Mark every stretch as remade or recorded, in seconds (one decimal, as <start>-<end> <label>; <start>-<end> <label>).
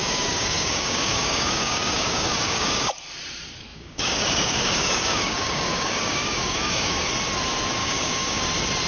0.0-2.9 remade; 2.9-3.7 recorded; 3.7-7.1 remade; 7.1-7.8 recorded; 7.8-8.4 remade; 8.4-8.9 recorded